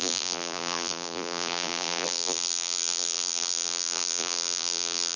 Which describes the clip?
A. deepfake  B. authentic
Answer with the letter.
A